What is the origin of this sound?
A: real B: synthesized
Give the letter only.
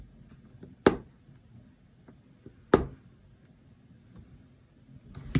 A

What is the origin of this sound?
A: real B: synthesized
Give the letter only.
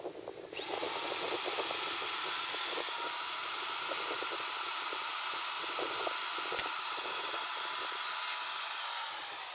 A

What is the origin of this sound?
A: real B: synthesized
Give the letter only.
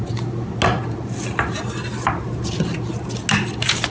A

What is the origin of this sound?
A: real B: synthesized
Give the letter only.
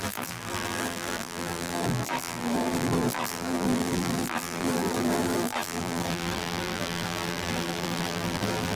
B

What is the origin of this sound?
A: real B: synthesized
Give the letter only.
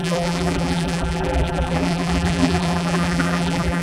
B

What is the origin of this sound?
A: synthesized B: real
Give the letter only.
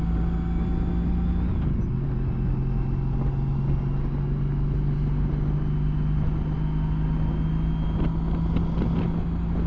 B